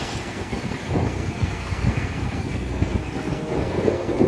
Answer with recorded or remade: remade